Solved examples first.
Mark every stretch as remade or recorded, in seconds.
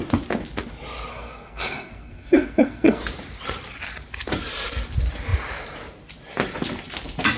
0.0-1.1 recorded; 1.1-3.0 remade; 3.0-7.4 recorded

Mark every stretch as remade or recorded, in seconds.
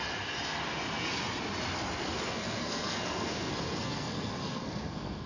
0.0-2.0 recorded; 2.0-5.3 remade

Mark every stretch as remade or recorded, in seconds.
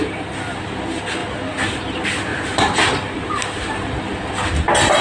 0.0-5.0 recorded